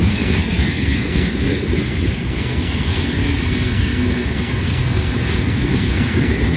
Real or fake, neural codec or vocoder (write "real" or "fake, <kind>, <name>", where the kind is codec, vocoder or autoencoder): fake, codec, SNAC